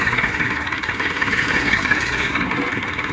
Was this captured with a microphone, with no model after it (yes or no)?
no